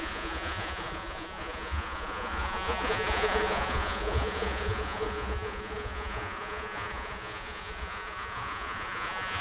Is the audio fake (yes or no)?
yes